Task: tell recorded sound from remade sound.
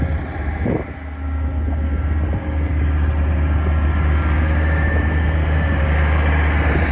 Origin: recorded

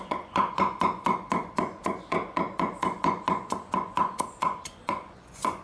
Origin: remade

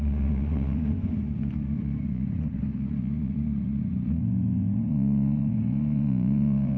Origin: remade